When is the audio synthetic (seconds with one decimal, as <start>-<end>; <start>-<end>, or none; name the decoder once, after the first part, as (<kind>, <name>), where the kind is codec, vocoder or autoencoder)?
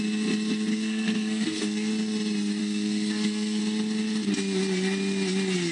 0.7-1.9 (codec, SNAC); 2.6-3.6